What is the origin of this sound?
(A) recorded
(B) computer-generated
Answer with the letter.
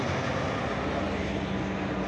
A